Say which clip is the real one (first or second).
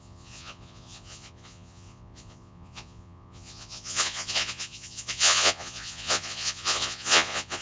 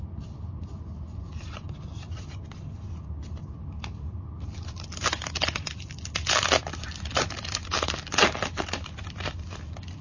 second